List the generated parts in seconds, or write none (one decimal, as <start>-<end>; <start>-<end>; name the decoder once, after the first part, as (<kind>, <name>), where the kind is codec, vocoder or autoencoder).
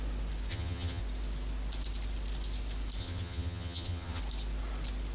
0.5-1.0 (vocoder, HiFi-GAN); 3.0-4.2